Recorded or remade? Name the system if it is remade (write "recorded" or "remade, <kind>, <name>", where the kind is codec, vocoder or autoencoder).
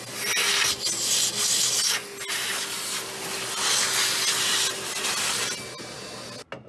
recorded